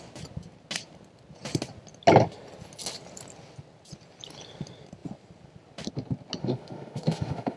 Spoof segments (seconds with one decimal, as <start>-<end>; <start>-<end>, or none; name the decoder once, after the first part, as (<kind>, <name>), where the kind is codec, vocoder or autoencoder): 6.4-7.6 (autoencoder, DAC-VAE)